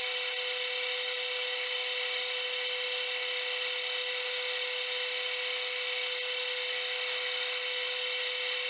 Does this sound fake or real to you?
real